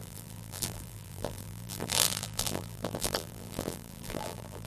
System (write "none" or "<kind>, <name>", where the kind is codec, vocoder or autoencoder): vocoder, BigVGAN v2